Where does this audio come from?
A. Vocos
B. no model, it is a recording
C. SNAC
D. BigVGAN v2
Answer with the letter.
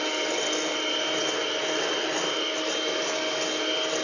B